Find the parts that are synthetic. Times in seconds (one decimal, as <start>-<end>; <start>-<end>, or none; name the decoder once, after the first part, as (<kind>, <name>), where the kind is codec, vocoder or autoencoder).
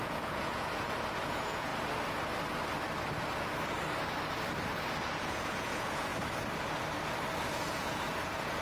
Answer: 0.0-1.7 (vocoder, Vocos); 5.2-6.1; 7.5-8.6